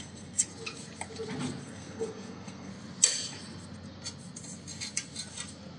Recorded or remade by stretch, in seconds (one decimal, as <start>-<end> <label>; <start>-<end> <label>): 0.0-0.5 remade; 0.5-1.6 recorded; 1.6-2.7 remade; 2.7-5.8 recorded